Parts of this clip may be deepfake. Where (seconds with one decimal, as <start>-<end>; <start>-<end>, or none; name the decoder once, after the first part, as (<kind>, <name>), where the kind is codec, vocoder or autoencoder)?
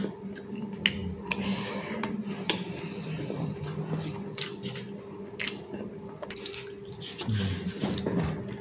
1.0-2.8 (vocoder, BigVGAN v2)